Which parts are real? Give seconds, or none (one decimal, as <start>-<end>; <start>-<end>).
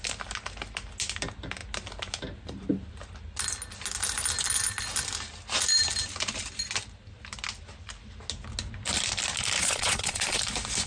0.0-9.6; 10.4-10.9